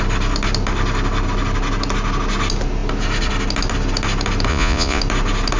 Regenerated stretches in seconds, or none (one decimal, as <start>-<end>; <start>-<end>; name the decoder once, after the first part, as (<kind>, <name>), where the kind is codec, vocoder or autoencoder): 4.5-5.0 (vocoder, Vocos)